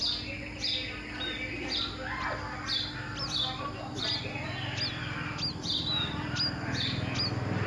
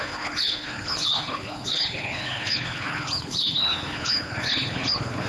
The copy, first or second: second